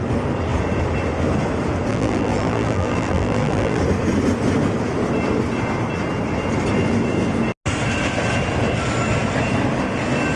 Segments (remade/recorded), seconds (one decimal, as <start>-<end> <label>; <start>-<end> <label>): 0.0-1.9 recorded; 1.9-3.8 remade; 3.8-10.4 recorded